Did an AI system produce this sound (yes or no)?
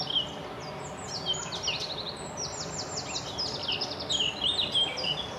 no